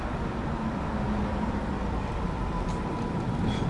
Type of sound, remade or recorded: remade